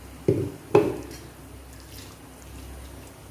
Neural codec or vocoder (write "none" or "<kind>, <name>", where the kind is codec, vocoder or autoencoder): none